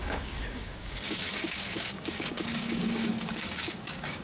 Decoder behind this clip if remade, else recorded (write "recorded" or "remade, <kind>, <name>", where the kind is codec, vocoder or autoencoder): remade, codec, DAC